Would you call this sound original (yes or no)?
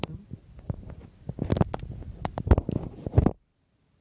yes